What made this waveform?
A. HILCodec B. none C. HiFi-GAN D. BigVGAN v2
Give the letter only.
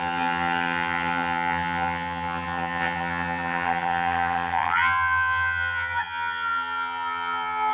C